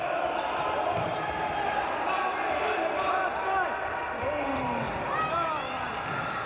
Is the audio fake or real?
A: real